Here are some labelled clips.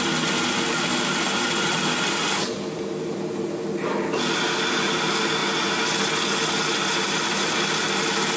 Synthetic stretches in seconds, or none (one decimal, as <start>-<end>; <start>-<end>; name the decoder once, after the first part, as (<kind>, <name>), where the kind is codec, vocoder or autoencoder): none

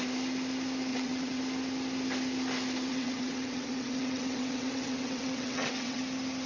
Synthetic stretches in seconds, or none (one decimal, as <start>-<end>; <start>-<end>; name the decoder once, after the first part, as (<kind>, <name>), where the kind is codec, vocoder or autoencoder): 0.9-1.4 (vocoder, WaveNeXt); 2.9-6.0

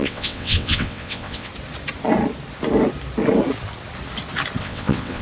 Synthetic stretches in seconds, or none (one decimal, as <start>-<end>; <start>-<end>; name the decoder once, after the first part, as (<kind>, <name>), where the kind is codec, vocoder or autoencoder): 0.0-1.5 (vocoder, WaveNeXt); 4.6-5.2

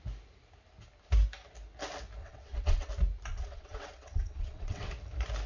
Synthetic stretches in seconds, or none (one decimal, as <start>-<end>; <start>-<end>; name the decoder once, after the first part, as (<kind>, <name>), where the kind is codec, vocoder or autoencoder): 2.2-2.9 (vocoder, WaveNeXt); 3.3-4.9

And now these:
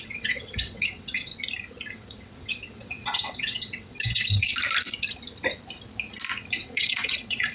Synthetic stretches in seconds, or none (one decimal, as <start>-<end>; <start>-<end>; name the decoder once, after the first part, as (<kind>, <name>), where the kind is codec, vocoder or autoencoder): 0.0-1.3 (vocoder, WaveNeXt); 1.9-4.5; 6.5-7.5

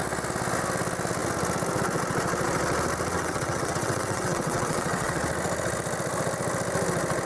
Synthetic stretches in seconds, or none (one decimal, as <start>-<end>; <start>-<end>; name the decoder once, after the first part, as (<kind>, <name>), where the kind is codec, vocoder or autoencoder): 3.1-5.2 (vocoder, WaveNeXt)

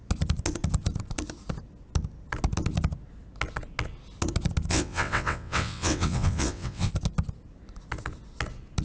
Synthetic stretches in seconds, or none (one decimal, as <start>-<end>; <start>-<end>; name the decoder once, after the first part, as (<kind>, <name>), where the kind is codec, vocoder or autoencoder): 4.7-6.9 (vocoder, WaveNeXt)